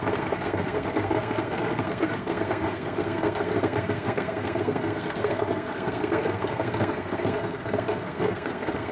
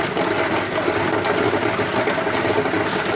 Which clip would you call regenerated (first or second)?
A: first